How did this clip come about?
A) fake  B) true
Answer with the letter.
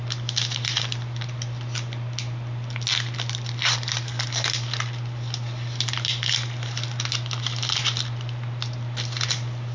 B